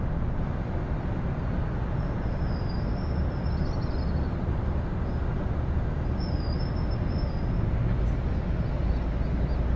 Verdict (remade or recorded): recorded